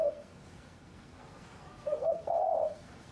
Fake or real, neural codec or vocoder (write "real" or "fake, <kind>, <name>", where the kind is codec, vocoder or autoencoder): fake, codec, SNAC